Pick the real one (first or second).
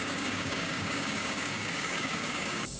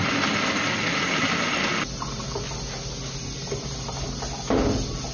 second